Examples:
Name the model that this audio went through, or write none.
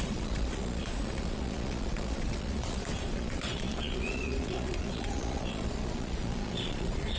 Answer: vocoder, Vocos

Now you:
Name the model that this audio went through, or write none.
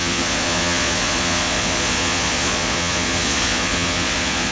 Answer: vocoder, Vocos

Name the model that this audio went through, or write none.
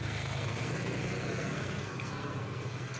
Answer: codec, SNAC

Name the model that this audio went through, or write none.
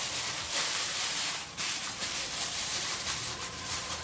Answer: vocoder, BigVGAN v2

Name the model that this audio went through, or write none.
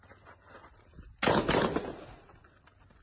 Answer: none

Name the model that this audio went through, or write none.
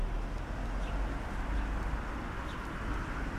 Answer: none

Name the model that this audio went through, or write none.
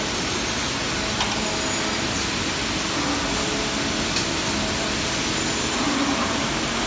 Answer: none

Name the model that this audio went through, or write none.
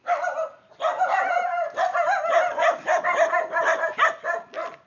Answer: none